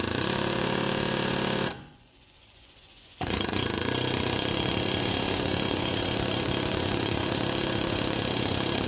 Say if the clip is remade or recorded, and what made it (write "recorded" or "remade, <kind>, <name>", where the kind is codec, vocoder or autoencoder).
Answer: remade, vocoder, Vocos